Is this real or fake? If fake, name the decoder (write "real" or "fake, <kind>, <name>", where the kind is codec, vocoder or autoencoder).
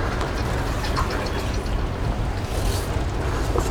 real